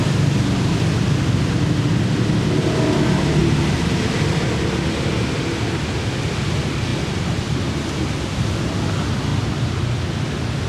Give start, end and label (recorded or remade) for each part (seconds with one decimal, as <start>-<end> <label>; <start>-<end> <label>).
0.0-9.3 recorded; 9.3-9.9 remade; 9.9-10.7 recorded

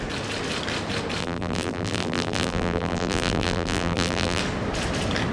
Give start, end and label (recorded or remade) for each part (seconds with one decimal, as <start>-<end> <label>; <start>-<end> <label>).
0.0-1.2 recorded; 1.2-4.4 remade; 4.4-5.3 recorded

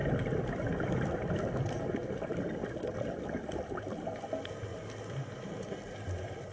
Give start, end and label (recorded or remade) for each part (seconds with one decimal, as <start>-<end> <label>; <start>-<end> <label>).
0.0-1.6 remade; 1.6-6.5 recorded